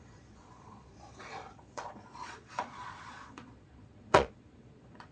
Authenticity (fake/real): fake